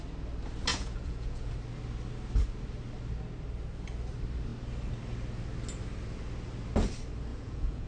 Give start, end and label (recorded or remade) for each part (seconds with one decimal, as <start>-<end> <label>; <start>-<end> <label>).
0.0-0.7 recorded; 0.7-1.5 remade; 1.5-7.3 recorded; 7.3-7.9 remade